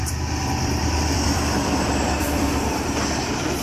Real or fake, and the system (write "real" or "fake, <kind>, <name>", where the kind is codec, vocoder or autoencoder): fake, vocoder, BigVGAN v2